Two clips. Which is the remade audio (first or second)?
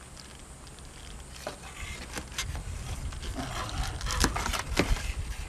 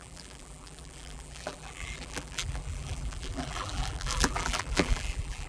second